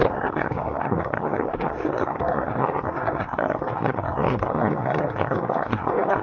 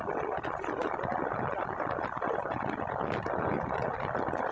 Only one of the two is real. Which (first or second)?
second